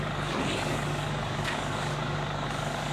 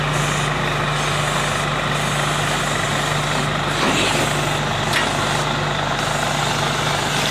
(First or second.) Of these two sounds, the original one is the second